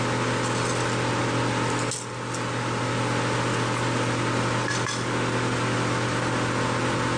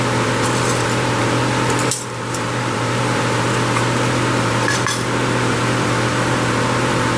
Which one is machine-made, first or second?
second